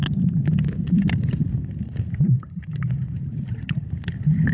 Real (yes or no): yes